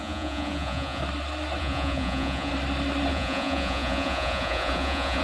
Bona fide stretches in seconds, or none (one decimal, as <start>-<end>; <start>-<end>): 1.0-1.6; 2.5-3.1